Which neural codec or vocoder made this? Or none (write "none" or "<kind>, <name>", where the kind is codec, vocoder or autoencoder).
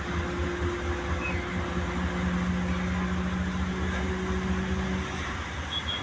none